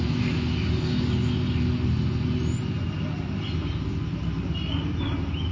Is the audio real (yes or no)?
yes